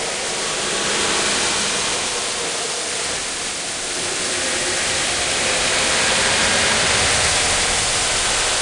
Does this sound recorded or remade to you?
recorded